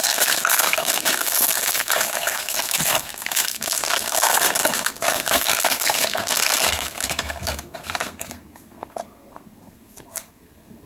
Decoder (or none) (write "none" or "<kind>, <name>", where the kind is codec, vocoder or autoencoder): codec, SNAC